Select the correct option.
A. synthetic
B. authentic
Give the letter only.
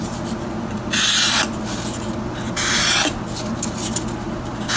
B